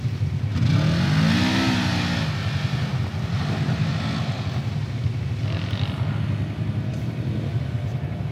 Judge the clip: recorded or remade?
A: recorded